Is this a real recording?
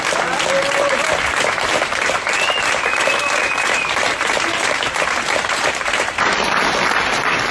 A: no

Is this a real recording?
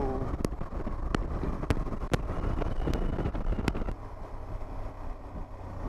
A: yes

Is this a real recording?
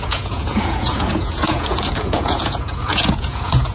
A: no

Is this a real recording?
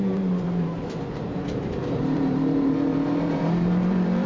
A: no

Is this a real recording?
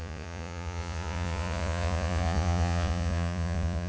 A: no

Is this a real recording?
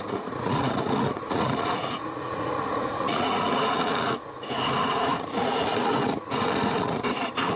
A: no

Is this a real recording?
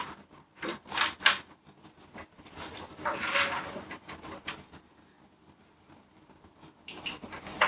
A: yes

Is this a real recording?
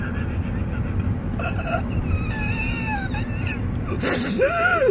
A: yes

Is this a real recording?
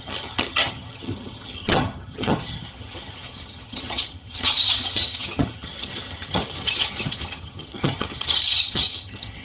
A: no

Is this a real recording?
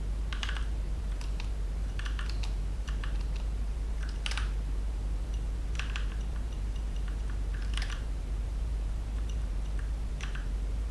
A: no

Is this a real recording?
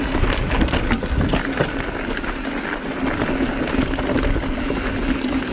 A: yes